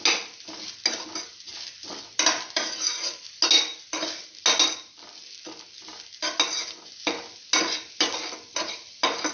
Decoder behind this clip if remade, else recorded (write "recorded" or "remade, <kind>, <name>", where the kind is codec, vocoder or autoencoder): recorded